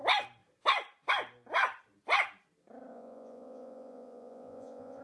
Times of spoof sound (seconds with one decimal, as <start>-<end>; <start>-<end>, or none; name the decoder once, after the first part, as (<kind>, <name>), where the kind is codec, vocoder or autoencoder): 2.9-5.0 (vocoder, Vocos)